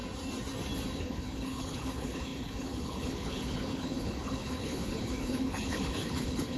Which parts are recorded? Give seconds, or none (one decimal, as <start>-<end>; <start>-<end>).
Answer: 0.0-1.0